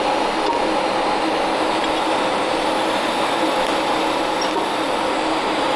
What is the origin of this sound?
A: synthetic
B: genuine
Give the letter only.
B